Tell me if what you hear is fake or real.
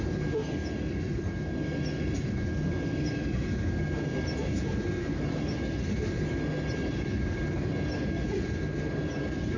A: real